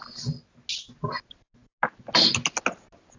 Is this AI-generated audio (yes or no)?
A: no